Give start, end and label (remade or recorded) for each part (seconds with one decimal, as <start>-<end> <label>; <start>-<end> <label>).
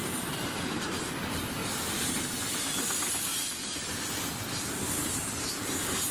0.0-1.6 remade; 1.6-4.5 recorded; 4.5-6.1 remade